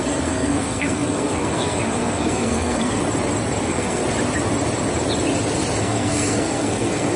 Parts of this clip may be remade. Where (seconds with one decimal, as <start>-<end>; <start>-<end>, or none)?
0.0-3.0; 3.6-4.0; 5.8-7.2